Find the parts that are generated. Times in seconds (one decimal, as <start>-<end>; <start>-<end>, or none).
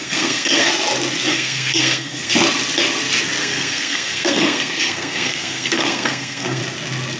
0.0-0.7; 1.3-2.3; 3.4-6.6